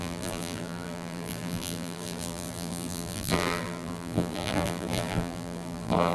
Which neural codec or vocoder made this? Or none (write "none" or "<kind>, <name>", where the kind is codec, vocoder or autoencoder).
vocoder, BigVGAN v2